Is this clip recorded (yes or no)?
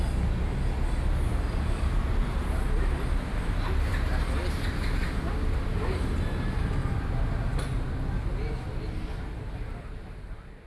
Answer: yes